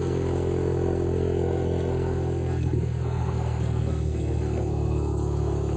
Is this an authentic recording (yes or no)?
no